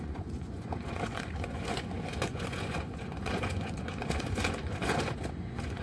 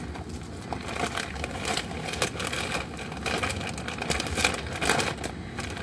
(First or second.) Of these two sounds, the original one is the second